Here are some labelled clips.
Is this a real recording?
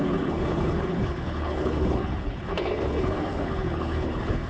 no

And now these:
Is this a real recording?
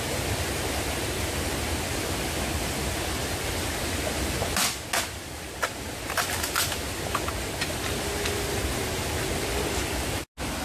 yes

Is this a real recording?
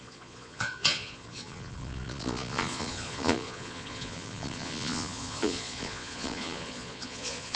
no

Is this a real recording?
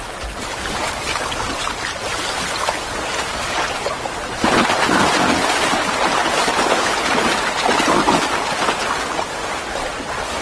yes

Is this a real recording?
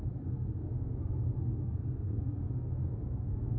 no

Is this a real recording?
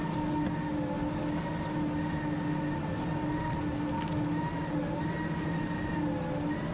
yes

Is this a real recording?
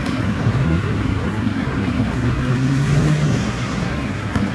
no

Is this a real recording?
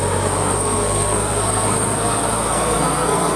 no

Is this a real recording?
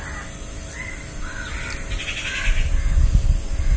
yes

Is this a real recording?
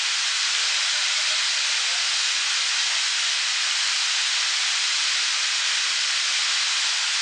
yes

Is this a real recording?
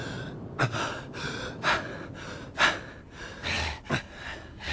yes